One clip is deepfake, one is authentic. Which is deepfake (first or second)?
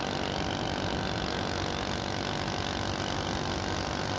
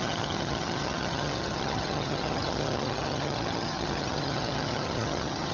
second